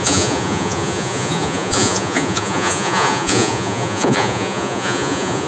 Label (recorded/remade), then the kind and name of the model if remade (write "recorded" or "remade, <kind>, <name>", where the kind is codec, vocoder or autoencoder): remade, vocoder, Vocos